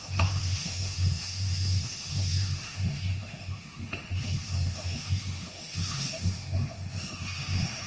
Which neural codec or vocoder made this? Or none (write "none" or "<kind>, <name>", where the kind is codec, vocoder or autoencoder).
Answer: autoencoder, DAC-VAE